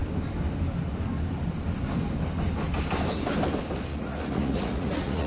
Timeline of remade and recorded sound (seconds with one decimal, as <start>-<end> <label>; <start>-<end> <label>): 0.0-3.9 recorded; 3.9-5.3 remade